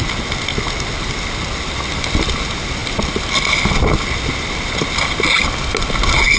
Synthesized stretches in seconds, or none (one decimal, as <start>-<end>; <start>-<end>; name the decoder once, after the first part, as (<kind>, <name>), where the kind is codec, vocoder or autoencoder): none